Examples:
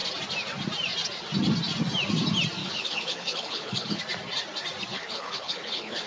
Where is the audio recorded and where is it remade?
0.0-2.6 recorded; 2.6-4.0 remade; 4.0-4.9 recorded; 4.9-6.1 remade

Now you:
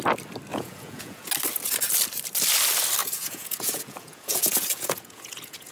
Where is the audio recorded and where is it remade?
0.0-0.5 recorded; 0.5-1.3 remade; 1.3-3.0 recorded; 3.0-5.7 remade

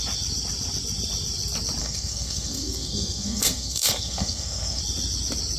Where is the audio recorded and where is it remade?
0.0-1.8 recorded; 1.8-4.8 remade; 4.8-5.6 recorded

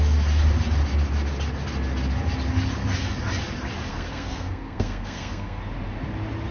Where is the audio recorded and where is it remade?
0.0-3.9 recorded; 3.9-5.6 remade; 5.6-6.5 recorded

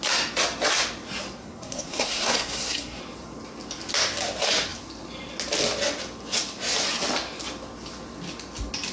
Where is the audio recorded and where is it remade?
0.0-1.4 recorded; 1.4-3.0 remade; 3.0-8.9 recorded